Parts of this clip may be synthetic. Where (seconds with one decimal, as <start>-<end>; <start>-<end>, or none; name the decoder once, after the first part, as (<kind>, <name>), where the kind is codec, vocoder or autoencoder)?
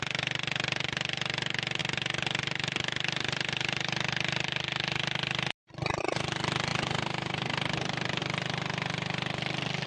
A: none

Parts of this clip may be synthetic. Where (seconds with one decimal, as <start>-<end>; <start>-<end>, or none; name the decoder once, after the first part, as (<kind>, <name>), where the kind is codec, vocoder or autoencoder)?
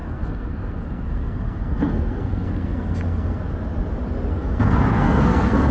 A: 0.0-3.4 (codec, SNAC); 4.3-5.7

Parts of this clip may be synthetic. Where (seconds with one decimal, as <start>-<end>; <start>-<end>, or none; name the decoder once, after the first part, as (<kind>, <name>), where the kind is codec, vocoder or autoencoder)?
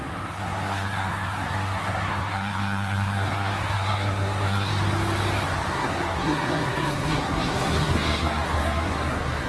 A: 0.0-4.7 (codec, SNAC); 5.7-9.5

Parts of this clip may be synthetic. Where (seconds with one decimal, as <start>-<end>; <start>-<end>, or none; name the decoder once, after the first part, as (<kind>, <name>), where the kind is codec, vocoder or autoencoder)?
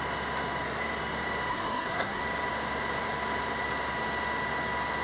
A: 1.5-2.2 (codec, SNAC)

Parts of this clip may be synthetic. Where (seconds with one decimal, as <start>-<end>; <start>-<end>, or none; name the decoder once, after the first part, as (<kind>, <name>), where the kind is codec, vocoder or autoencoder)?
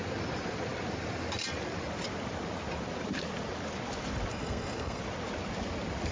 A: 4.3-5.0 (codec, SNAC)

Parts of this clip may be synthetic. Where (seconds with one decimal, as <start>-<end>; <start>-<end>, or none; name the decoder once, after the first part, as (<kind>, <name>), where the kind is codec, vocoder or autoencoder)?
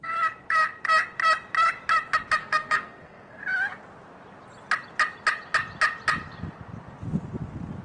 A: 2.4-3.4 (codec, SNAC)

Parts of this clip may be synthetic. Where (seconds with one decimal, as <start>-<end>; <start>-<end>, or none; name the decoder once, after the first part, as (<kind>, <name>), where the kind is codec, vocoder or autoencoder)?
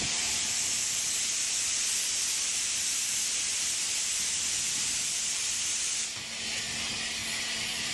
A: none